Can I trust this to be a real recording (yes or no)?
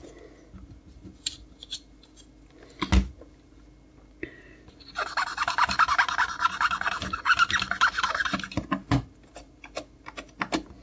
yes